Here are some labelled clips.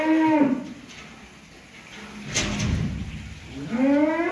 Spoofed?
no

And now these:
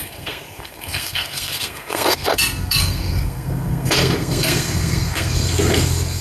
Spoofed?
yes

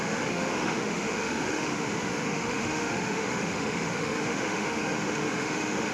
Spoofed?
yes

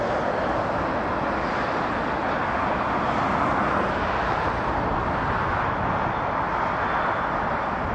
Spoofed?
no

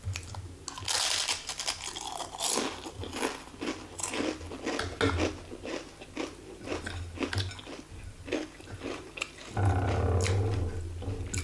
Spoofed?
no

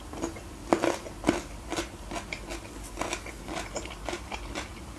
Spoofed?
no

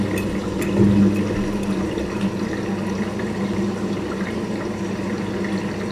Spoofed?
no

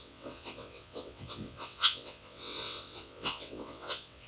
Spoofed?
yes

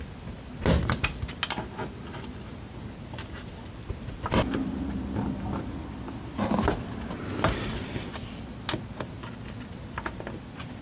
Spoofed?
no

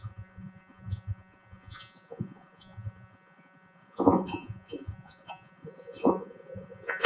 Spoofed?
yes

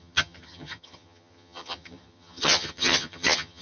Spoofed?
yes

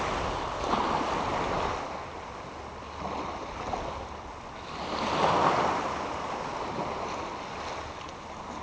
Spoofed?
no